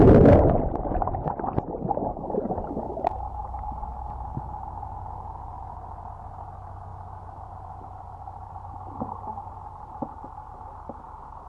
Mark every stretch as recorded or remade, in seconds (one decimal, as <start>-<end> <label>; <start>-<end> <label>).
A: 0.0-11.5 recorded